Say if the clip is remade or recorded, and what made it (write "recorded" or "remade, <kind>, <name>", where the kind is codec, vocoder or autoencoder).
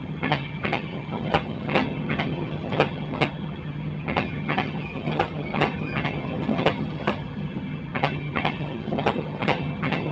remade, vocoder, HiFi-GAN